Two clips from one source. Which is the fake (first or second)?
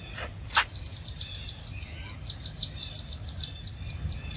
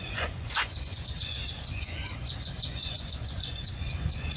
second